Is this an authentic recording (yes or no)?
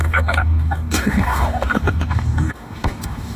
no